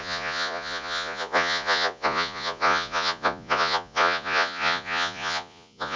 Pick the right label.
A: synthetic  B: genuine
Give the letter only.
A